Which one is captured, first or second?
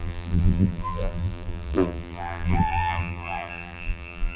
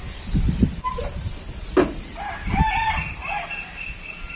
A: second